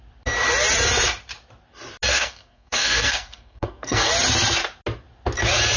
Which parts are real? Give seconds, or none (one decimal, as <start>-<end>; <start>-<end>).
0.0-2.1; 4.1-5.8